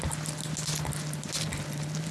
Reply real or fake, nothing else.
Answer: real